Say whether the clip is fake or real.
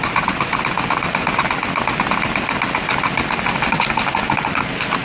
real